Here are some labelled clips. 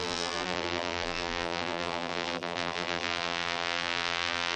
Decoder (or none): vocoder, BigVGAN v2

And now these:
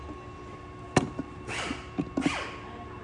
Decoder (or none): none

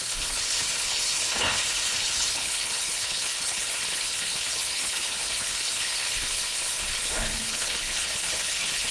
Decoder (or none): codec, HILCodec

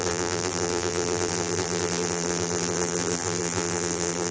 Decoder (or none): vocoder, BigVGAN v2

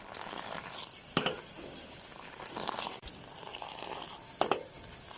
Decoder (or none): none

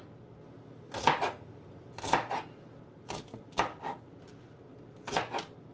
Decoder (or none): none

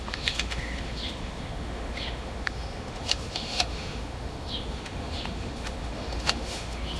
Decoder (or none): autoencoder, DAC-VAE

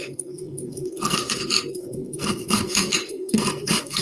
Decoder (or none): codec, SNAC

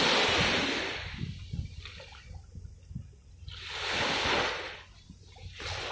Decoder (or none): none